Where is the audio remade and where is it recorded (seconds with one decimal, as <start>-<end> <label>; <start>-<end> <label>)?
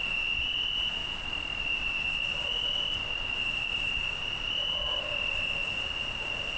0.0-6.6 recorded